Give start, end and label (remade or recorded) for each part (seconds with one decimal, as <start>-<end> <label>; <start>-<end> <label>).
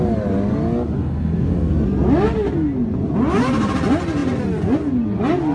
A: 0.0-1.0 recorded; 1.0-1.7 remade; 1.7-5.5 recorded